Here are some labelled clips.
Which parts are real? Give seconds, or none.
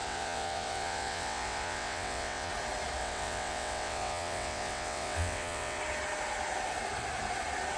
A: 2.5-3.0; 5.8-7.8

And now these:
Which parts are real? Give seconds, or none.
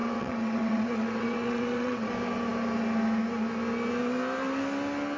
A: 2.1-5.2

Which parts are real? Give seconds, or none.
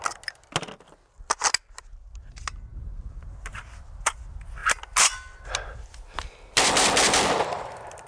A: 0.0-8.1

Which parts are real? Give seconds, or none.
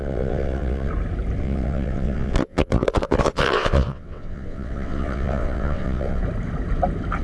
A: 0.9-1.4; 6.2-7.2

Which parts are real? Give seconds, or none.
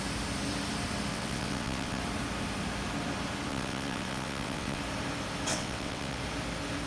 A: 0.0-1.1; 2.0-3.5; 4.8-5.5; 6.2-6.9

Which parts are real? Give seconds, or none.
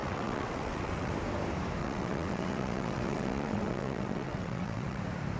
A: 1.1-1.8; 5.0-5.4